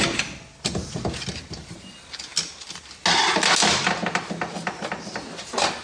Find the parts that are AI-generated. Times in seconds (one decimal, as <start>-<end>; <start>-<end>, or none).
none